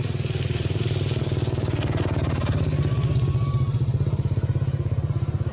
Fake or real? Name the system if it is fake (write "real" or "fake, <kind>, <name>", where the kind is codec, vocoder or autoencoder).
real